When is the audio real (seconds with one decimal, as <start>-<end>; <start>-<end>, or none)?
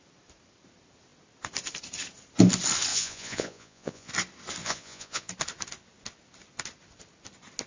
0.0-2.9; 4.1-4.6; 5.3-7.7